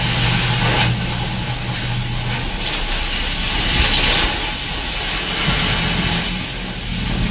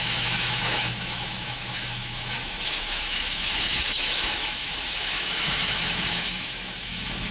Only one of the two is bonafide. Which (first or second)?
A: first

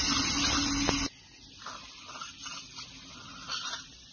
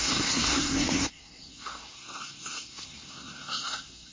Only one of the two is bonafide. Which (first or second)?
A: first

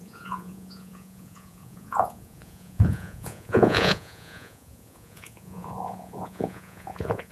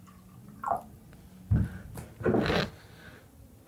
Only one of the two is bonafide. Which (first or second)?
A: second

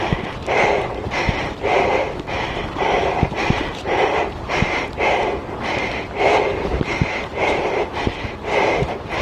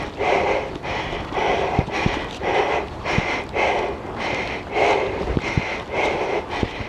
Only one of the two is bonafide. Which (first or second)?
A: second